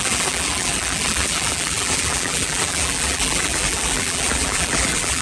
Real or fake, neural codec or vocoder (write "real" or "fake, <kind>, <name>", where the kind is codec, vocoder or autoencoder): fake, vocoder, BigVGAN v2